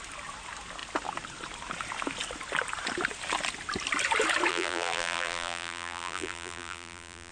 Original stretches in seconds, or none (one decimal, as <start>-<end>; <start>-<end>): 0.0-4.5